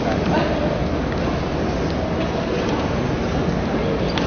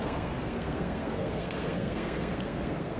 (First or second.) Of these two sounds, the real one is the first